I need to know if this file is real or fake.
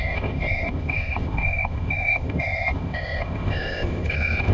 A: fake